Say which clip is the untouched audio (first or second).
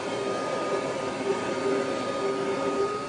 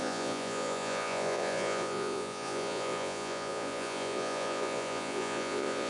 first